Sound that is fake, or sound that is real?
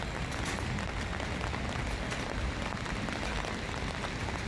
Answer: real